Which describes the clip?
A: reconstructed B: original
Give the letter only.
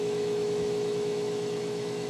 A